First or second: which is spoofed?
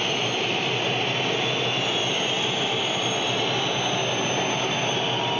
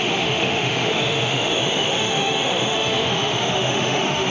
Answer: second